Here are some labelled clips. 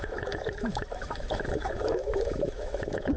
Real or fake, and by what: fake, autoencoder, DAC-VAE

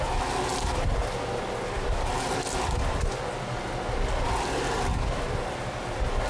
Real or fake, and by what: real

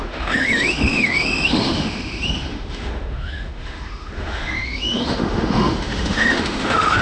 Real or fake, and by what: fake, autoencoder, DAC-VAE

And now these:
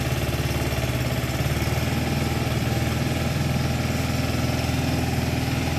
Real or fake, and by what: real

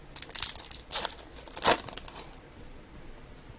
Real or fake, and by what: real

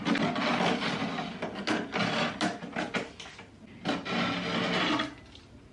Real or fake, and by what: real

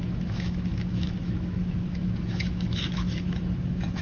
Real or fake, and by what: fake, autoencoder, DAC-VAE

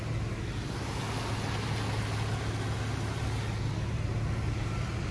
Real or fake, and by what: real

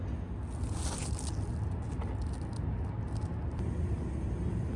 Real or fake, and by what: real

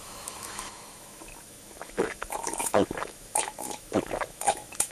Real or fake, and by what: fake, autoencoder, DAC-VAE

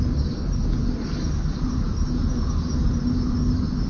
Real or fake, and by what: real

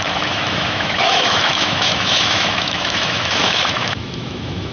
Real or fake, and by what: fake, autoencoder, DAC-VAE